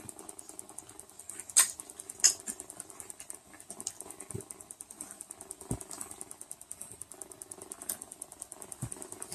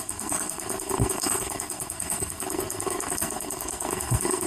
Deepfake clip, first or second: second